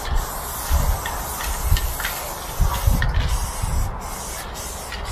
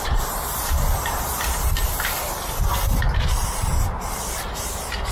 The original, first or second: first